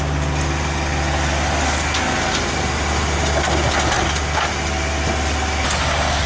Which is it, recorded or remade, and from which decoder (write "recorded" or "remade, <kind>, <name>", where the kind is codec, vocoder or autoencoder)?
recorded